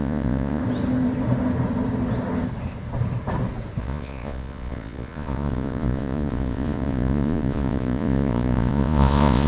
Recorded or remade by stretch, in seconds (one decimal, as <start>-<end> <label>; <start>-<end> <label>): 0.0-0.6 remade; 0.6-3.8 recorded; 3.8-9.5 remade